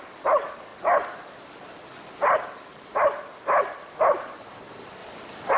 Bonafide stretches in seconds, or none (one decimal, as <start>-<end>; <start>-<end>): 0.0-5.6